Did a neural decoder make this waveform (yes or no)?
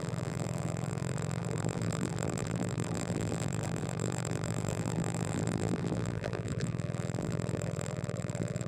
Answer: yes